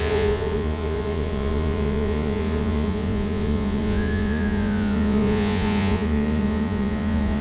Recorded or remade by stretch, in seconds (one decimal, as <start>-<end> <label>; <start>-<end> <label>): 0.0-7.4 remade